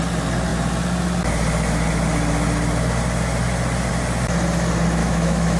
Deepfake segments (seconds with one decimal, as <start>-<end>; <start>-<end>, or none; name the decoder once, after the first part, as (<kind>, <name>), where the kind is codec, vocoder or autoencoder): 5.0-5.6 (autoencoder, DAC-VAE)